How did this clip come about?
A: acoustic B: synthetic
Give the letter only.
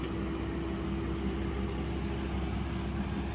A